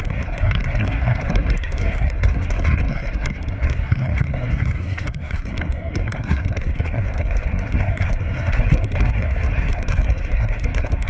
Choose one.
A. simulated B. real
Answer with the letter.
A